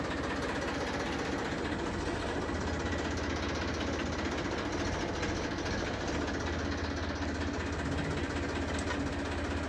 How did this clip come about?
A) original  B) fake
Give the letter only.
A